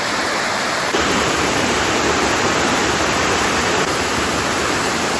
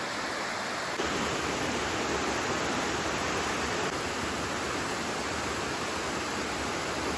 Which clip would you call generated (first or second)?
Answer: first